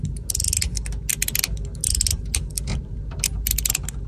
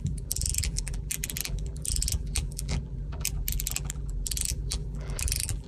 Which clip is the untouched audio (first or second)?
first